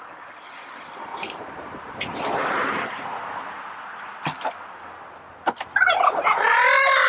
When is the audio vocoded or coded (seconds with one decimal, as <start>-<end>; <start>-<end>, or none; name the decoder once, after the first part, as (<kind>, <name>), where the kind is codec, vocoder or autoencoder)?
1.1-3.9 (vocoder, BigVGAN v2)